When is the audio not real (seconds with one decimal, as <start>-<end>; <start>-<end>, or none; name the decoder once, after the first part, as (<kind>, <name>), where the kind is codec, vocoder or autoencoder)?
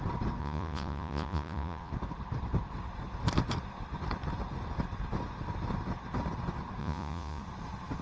0.4-1.9 (vocoder, Vocos); 6.8-7.4